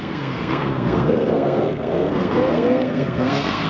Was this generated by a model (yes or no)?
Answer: yes